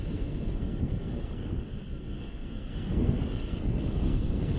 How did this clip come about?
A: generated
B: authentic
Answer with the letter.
A